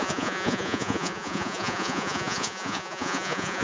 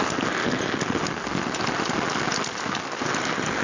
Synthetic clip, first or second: first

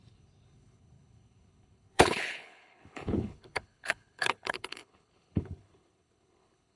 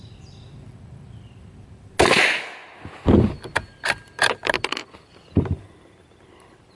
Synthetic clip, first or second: first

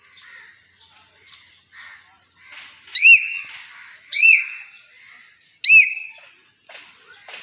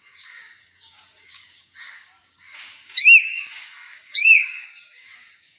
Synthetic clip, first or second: second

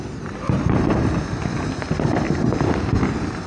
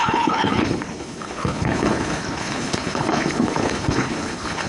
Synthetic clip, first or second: second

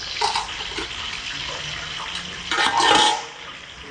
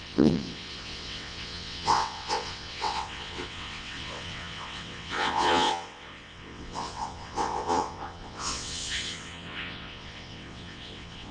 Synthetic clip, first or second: second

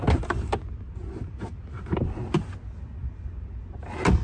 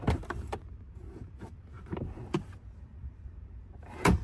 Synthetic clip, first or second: second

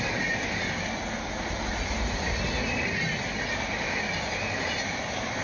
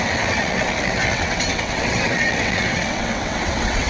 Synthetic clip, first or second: second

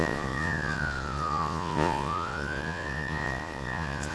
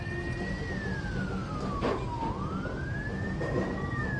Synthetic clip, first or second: first